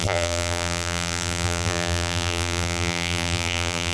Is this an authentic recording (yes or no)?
no